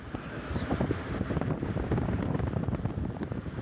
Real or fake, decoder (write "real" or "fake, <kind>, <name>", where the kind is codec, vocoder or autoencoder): fake, vocoder, BigVGAN v2